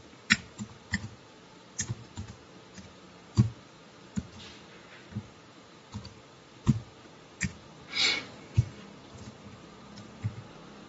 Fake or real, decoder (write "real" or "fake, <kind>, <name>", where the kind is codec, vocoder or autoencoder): fake, vocoder, BigVGAN v2